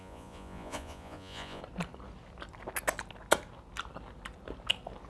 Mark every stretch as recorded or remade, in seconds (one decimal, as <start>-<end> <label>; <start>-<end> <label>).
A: 0.0-1.6 remade; 1.6-5.1 recorded